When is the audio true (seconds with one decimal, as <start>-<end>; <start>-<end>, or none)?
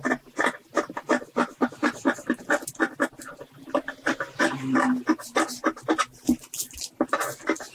0.0-7.7